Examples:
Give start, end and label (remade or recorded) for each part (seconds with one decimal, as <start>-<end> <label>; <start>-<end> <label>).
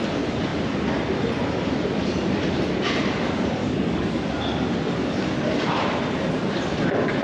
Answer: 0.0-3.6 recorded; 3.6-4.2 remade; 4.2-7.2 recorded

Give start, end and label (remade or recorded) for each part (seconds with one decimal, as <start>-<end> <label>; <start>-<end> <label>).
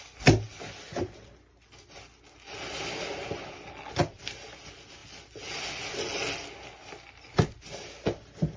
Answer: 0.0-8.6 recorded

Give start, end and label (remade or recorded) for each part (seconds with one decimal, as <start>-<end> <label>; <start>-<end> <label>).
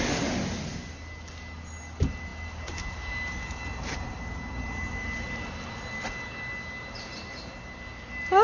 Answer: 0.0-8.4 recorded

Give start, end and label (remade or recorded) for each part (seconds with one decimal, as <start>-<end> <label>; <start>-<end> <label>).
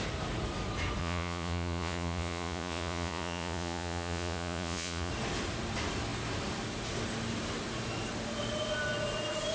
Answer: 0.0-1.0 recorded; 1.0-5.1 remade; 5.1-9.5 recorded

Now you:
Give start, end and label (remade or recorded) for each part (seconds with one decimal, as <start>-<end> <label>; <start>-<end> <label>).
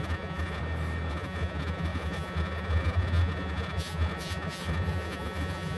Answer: 0.0-0.6 remade; 0.6-1.1 recorded; 1.1-5.8 remade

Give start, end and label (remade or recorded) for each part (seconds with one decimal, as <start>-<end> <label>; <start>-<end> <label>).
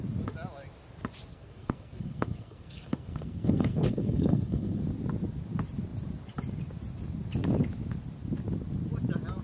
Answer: 0.0-1.3 recorded; 1.3-4.8 remade; 4.8-9.4 recorded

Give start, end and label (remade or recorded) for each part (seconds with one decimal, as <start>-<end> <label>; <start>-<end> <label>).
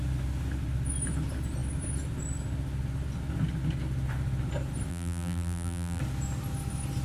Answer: 0.0-4.9 recorded; 4.9-6.0 remade; 6.0-7.0 recorded